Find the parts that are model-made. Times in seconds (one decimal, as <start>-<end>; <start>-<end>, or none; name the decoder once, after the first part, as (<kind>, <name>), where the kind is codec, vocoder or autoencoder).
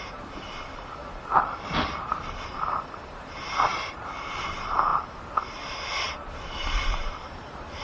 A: 0.0-4.9 (vocoder, BigVGAN v2); 6.0-7.8